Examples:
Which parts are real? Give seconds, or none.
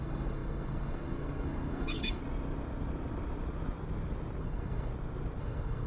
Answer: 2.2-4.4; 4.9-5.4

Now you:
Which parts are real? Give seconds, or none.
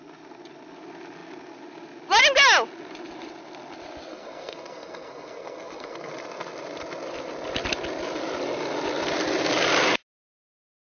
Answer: 0.0-4.1; 6.1-10.8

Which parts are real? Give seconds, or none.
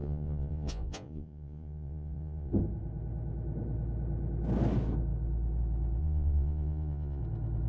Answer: 2.5-6.0; 7.2-7.7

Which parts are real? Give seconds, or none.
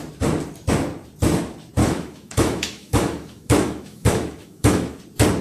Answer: 0.0-1.8; 5.0-5.4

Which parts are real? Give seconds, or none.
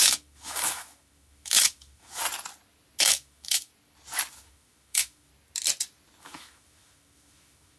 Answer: 2.2-3.0; 3.7-4.3; 5.3-6.2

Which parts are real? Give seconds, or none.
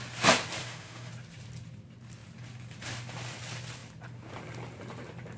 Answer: 0.0-0.6; 1.1-5.4